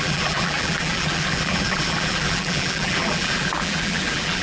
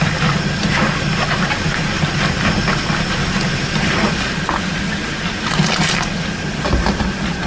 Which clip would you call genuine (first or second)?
second